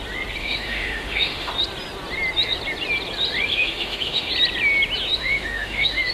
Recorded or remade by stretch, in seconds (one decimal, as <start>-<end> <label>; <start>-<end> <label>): 0.0-0.4 recorded; 0.4-1.5 remade; 1.5-3.5 recorded; 3.5-4.3 remade; 4.3-5.2 recorded; 5.2-6.1 remade